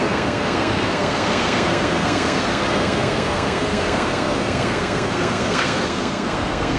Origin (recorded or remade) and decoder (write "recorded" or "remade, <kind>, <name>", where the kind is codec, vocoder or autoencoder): remade, codec, SNAC